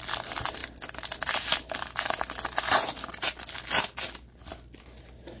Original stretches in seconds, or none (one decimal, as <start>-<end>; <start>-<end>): 0.0-5.4